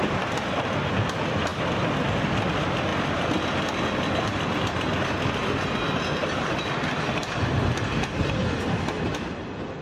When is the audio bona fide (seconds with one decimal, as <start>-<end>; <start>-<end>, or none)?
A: 0.0-9.8